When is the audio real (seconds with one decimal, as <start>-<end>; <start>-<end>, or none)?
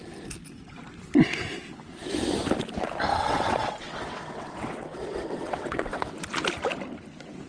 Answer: 0.0-3.1; 6.1-7.5